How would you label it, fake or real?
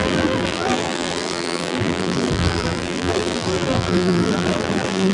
fake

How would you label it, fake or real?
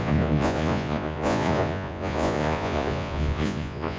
fake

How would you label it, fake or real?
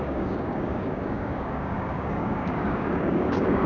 fake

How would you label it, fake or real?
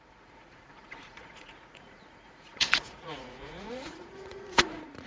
fake